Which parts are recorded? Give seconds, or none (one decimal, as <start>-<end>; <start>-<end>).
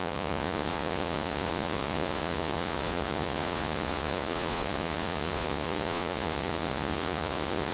none